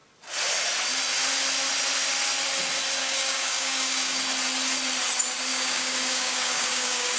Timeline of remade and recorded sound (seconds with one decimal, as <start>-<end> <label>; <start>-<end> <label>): 0.0-3.0 recorded; 3.0-4.2 remade; 4.2-5.5 recorded; 5.5-7.2 remade

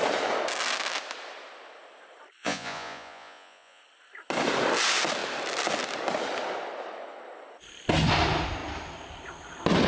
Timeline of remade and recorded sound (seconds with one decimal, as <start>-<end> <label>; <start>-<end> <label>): 0.0-2.4 recorded; 2.4-3.8 remade; 3.8-9.9 recorded

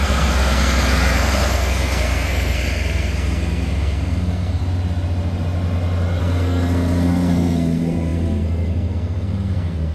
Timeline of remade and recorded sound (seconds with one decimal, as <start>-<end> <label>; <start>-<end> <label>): 0.0-4.6 remade; 4.6-6.2 recorded; 6.2-9.9 remade

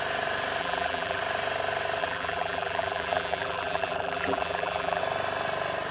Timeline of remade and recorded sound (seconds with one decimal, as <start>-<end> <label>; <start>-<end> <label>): 0.0-0.6 recorded; 0.6-1.2 remade; 1.2-2.0 recorded; 2.0-5.0 remade; 5.0-5.9 recorded

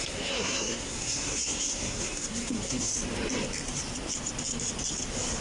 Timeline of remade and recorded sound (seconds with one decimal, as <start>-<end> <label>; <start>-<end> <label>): 0.0-2.9 remade; 2.9-5.4 recorded

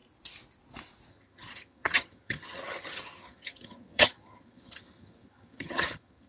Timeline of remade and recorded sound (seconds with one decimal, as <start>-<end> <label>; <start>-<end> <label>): 0.0-1.1 recorded; 1.1-6.3 remade

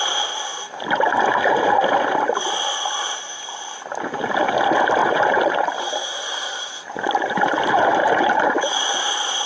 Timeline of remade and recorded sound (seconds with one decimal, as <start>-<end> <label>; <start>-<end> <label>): 0.0-5.0 recorded; 5.0-6.6 remade; 6.6-8.0 recorded; 8.0-9.5 remade